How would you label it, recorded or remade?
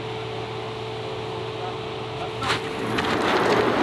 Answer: recorded